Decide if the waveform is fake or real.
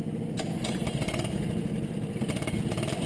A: fake